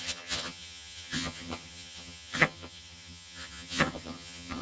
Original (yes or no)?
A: no